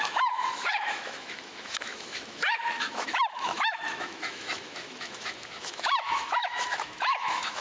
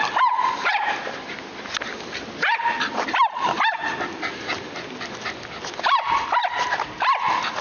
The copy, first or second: first